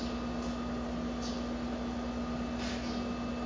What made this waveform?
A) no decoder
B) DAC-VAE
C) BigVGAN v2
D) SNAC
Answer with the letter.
A